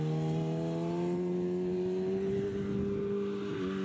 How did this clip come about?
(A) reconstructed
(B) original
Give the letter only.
B